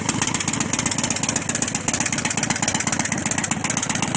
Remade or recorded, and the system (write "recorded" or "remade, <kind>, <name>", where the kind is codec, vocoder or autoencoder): recorded